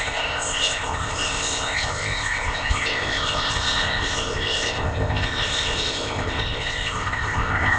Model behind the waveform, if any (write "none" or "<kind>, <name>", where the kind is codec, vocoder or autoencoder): codec, ZipCodec